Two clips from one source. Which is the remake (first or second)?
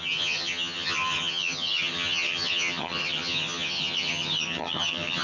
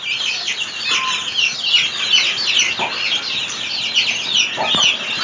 first